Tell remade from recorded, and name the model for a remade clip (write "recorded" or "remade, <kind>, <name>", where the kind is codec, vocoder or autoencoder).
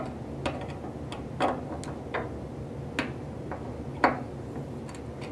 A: recorded